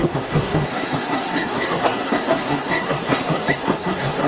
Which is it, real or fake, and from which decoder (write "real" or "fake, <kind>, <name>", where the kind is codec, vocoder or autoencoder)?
fake, codec, SNAC